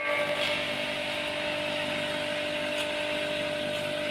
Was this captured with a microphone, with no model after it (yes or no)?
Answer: yes